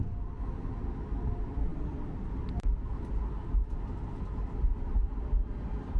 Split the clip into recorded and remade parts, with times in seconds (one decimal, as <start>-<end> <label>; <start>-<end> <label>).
0.0-6.0 recorded